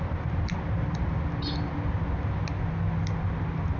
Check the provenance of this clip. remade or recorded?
recorded